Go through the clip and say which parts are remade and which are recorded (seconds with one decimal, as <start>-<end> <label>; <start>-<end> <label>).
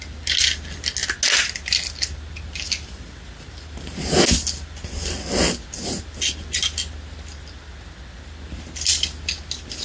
0.0-9.8 recorded